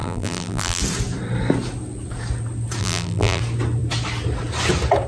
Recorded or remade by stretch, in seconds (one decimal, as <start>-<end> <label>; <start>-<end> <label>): 0.0-0.8 remade; 0.8-2.8 recorded; 2.8-3.4 remade; 3.4-5.1 recorded